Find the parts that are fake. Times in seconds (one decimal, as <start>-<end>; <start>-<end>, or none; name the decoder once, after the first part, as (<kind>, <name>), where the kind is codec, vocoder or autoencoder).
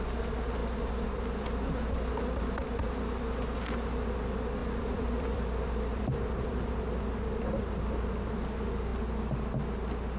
4.6-6.6 (vocoder, BigVGAN v2)